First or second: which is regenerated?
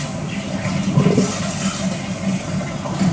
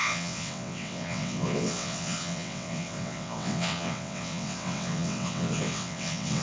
second